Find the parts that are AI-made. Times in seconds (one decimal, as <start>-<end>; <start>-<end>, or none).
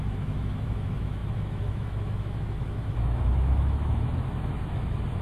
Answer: 0.0-5.2